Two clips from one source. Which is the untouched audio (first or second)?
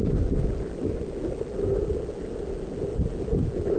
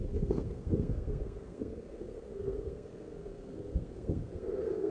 first